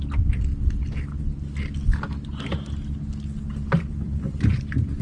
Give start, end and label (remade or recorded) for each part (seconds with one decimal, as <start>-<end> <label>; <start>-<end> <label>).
0.0-0.5 remade; 0.5-3.5 recorded; 3.5-5.0 remade